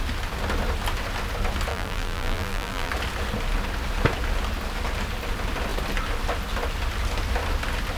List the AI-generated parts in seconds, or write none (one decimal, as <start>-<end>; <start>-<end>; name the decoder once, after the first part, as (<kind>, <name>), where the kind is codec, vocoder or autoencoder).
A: 1.7-2.9 (vocoder, BigVGAN v2)